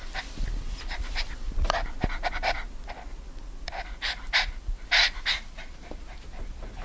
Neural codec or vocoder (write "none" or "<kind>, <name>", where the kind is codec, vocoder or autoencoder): none